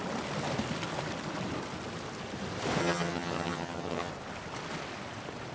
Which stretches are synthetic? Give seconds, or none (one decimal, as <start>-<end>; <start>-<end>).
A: 2.8-4.1